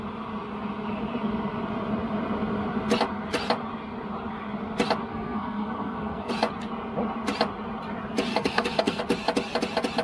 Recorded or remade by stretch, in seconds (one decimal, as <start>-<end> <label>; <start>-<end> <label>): 0.0-5.1 recorded; 5.1-6.3 remade; 6.3-8.3 recorded; 8.3-9.0 remade; 9.0-10.0 recorded